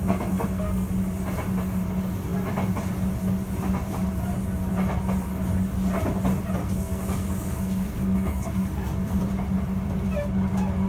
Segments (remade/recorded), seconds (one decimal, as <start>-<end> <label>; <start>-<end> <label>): 0.0-0.9 remade; 0.9-6.6 recorded; 6.6-9.2 remade; 9.2-10.9 recorded